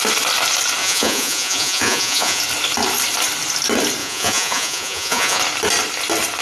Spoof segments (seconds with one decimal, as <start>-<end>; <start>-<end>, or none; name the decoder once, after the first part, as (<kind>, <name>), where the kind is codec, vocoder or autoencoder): 0.8-2.4 (vocoder, Vocos); 4.0-5.4